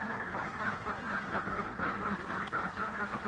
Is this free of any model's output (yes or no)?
no